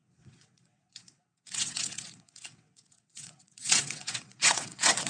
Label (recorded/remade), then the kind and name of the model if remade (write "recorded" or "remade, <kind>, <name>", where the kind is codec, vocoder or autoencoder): remade, vocoder, WaveNeXt